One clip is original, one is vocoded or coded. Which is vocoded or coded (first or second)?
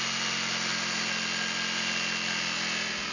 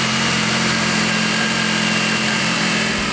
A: second